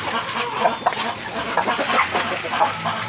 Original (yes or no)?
yes